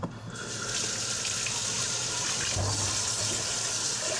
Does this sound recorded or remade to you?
recorded